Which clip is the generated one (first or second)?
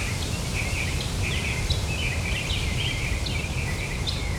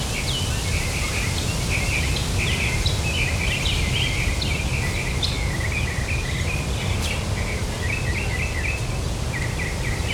first